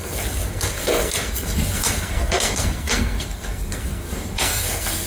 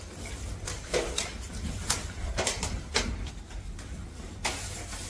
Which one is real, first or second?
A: second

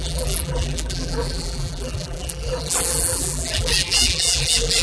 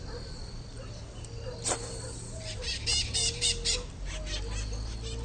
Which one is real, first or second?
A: second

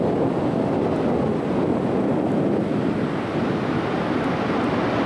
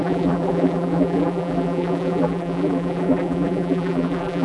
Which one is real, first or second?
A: first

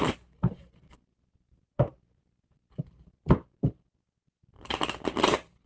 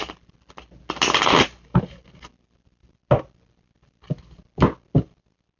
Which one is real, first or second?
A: second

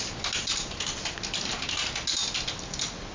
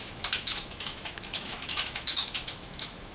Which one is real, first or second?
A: first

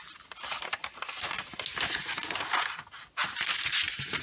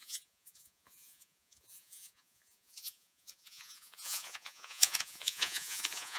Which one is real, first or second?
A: first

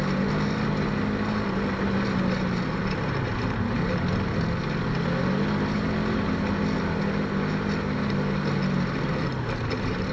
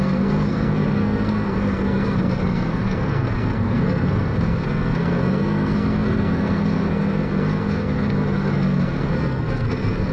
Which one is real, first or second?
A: first